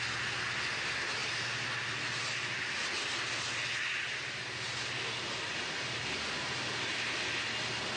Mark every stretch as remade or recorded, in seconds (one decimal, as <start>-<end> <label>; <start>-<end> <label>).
0.0-8.0 recorded